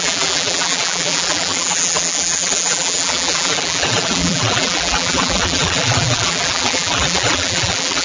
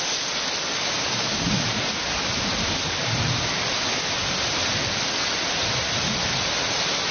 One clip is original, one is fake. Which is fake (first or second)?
first